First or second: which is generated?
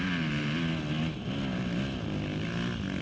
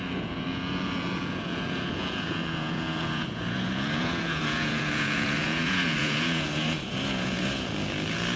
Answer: second